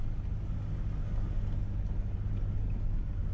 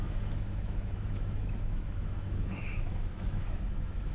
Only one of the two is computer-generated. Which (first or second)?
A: second